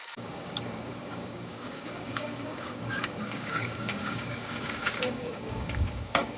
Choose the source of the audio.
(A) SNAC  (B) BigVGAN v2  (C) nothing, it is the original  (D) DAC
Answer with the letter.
D